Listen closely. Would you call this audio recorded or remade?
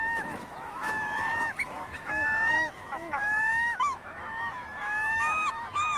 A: remade